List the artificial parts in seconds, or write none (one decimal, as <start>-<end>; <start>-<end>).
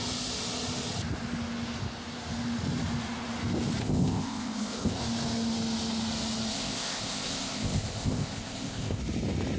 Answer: 3.8-5.0; 6.5-9.0